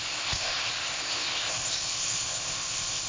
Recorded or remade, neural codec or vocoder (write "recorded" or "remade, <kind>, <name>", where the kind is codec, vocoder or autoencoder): remade, codec, ZipCodec